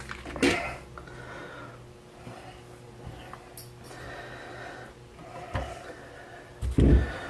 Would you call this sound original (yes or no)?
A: yes